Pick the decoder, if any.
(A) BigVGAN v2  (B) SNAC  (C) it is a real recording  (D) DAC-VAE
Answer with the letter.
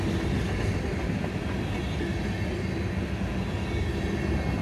C